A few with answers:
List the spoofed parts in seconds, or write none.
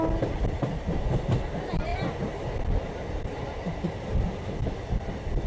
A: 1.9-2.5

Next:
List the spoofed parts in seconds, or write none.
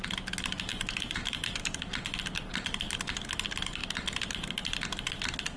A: none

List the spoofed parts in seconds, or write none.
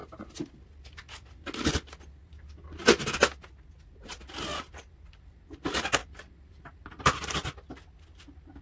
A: 6.0-7.2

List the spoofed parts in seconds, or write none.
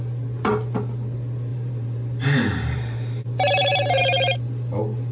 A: 1.5-4.0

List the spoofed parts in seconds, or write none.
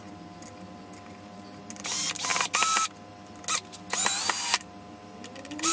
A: none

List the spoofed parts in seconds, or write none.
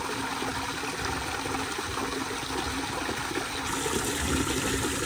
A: none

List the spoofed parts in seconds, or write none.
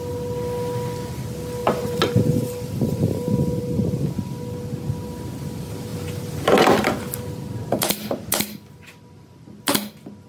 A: 1.6-3.6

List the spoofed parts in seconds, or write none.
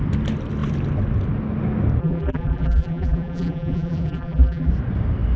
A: 2.0-4.7